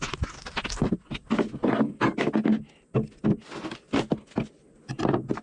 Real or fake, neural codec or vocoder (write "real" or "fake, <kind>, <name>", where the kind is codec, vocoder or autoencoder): real